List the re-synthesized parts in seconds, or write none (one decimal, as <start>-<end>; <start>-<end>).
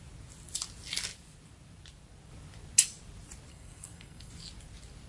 3.5-4.3